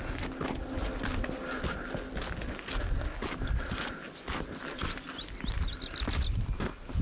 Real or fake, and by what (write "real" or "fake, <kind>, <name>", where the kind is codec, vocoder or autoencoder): real